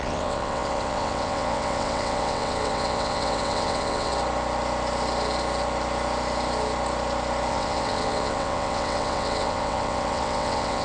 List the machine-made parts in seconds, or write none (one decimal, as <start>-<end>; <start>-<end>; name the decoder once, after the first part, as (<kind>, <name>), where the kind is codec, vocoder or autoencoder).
0.0-4.1 (vocoder, WaveNeXt); 7.5-10.8